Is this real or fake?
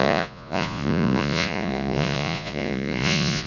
fake